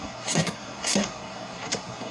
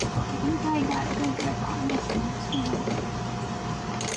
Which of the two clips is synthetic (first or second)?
first